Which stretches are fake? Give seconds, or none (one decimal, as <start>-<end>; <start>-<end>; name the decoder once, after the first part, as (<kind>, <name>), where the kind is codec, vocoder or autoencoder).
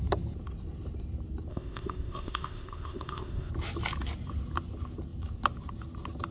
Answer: 1.5-3.5 (codec, ZipCodec)